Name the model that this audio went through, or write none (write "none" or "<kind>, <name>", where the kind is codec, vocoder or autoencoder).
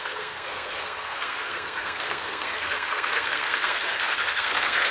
codec, SNAC